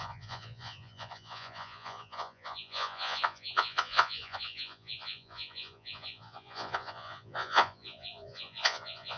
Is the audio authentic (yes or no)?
no